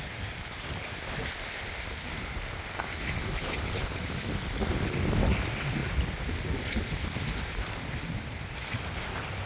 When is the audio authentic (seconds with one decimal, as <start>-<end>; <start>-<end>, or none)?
0.0-9.5